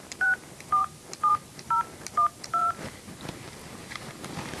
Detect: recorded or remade remade